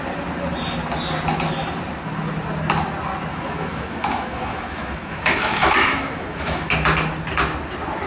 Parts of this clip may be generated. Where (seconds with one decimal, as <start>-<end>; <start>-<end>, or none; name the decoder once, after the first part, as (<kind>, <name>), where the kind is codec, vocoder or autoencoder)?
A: 3.3-6.7 (autoencoder, DAC-VAE)